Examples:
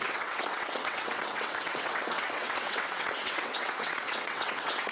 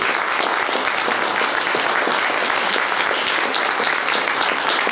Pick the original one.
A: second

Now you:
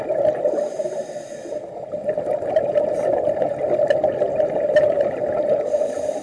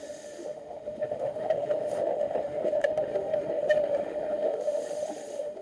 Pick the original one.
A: first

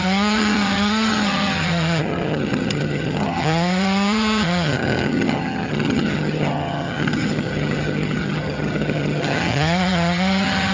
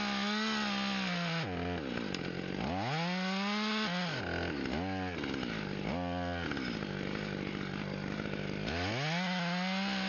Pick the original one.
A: second